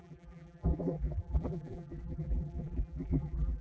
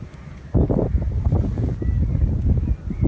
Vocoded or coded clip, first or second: first